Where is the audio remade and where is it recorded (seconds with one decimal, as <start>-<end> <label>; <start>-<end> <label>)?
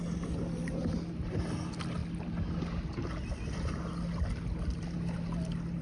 0.0-5.8 recorded